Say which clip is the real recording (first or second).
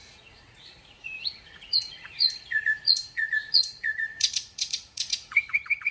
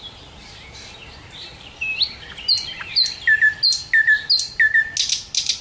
second